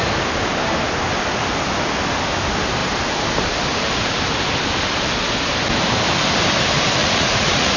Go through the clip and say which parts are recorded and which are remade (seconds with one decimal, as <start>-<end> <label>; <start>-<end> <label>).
0.0-7.0 recorded; 7.0-7.8 remade